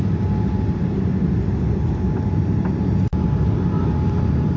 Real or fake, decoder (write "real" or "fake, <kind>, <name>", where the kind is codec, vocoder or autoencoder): real